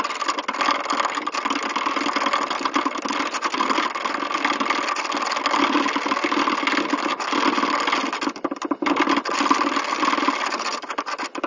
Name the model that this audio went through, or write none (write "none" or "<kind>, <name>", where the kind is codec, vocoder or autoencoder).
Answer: none